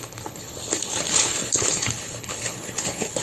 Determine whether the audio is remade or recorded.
remade